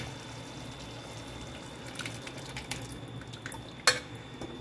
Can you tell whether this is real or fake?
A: real